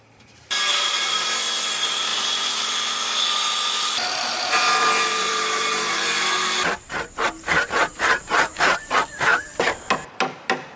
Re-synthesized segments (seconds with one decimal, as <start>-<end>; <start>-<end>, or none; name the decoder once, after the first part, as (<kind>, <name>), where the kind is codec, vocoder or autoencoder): 0.0-9.3 (vocoder, BigVGAN v2)